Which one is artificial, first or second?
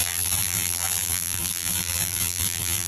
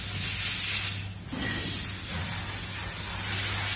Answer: first